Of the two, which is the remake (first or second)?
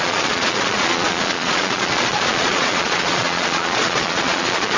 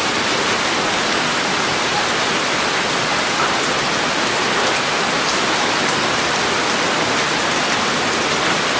first